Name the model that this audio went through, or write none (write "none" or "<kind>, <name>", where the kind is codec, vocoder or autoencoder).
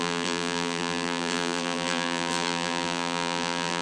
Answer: vocoder, BigVGAN v2